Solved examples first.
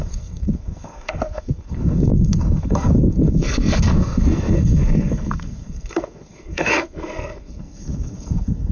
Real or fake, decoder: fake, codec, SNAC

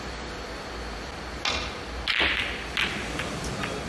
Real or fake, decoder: real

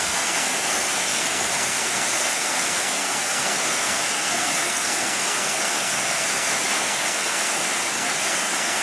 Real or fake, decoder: fake, codec, SNAC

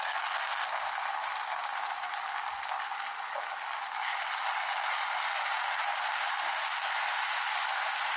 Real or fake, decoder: real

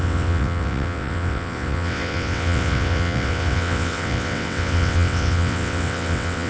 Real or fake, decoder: fake, vocoder, WaveNeXt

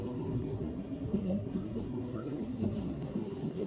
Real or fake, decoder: fake, codec, SNAC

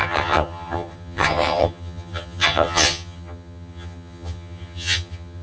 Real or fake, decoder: fake, vocoder, HiFi-GAN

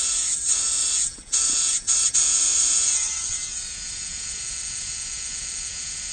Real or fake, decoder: fake, vocoder, WaveNeXt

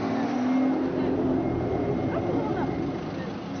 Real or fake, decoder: real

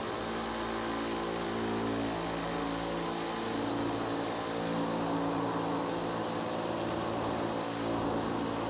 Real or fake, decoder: real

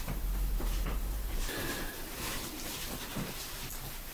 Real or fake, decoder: fake, vocoder, BigVGAN v2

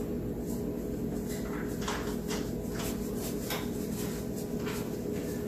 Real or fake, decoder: real